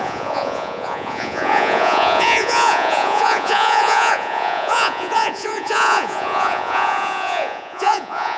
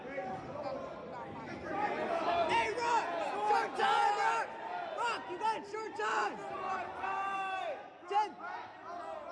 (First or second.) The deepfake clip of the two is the first